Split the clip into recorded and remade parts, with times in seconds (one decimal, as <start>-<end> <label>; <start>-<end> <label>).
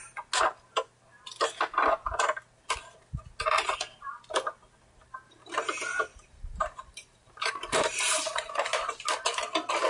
0.0-6.1 recorded; 6.1-8.5 remade; 8.5-9.9 recorded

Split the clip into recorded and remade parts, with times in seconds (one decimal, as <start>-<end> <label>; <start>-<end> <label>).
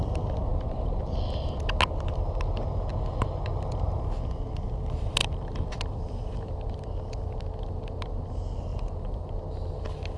0.0-5.2 recorded; 5.2-6.4 remade; 6.4-8.7 recorded; 8.7-9.3 remade; 9.3-10.2 recorded